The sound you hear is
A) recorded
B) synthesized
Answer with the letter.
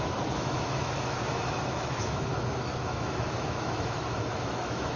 B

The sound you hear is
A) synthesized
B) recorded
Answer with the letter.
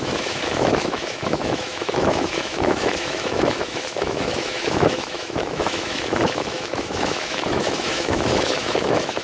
A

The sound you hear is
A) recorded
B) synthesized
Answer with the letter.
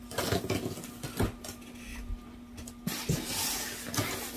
A